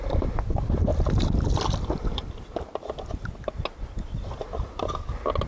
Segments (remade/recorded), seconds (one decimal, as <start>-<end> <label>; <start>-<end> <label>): 0.0-5.5 recorded